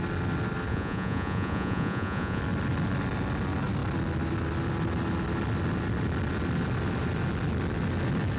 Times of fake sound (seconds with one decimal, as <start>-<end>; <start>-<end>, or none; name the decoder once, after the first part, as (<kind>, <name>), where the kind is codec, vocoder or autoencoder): 0.7-2.4 (vocoder, Vocos)